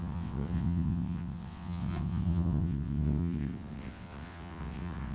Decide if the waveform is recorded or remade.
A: remade